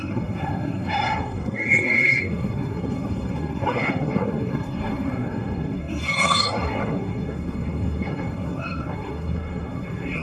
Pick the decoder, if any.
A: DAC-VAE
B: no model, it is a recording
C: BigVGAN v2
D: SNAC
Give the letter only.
D